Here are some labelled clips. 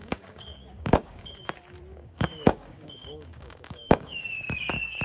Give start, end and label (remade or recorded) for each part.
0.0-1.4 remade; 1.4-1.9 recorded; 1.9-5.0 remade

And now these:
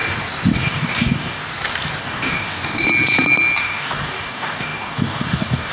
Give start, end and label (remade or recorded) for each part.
0.0-0.5 recorded; 0.5-1.4 remade; 1.4-2.0 recorded; 2.0-2.9 remade; 2.9-3.6 recorded; 3.6-5.7 remade